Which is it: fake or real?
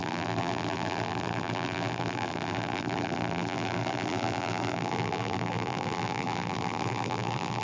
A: fake